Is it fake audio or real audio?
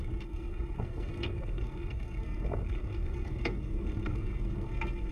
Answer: fake